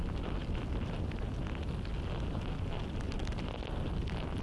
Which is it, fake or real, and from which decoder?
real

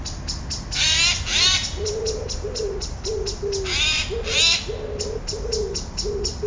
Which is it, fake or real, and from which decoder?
real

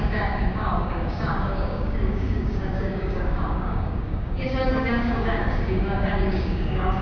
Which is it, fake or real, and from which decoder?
fake, codec, DAC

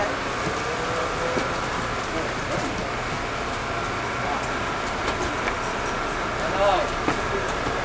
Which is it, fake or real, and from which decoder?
real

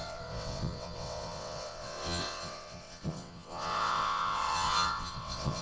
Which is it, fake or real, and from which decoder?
fake, vocoder, WaveNeXt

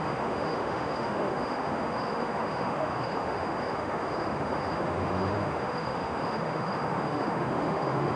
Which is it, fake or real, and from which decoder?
fake, autoencoder, DAC-VAE